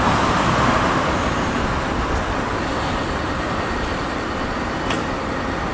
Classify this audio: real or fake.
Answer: real